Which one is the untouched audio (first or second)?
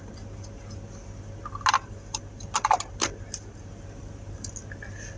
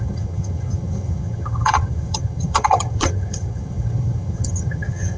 first